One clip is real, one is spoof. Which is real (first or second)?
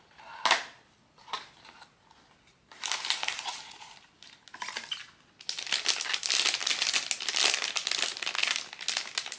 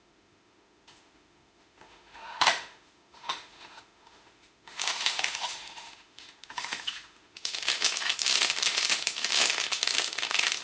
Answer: first